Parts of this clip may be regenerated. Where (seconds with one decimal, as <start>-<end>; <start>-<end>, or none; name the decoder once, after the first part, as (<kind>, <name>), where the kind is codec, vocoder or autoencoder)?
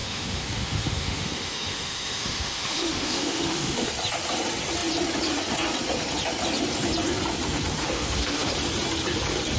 0.0-3.9 (autoencoder, DAC-VAE); 7.8-8.5